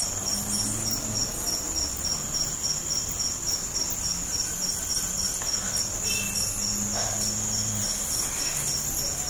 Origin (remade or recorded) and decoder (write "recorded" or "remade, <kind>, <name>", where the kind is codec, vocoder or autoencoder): recorded